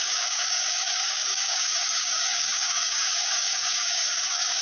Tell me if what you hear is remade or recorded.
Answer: remade